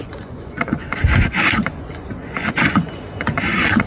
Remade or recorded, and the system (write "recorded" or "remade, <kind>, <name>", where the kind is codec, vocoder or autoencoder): remade, vocoder, Vocos